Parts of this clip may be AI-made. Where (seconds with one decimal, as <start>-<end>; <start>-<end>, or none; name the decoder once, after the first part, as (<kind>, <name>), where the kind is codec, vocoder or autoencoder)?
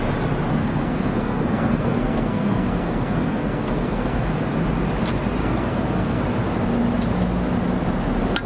0.6-4.3 (codec, SNAC); 5.4-6.2